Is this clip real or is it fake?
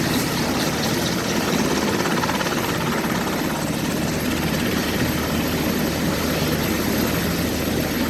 real